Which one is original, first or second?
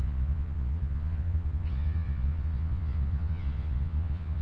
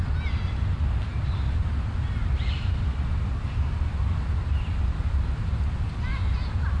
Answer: second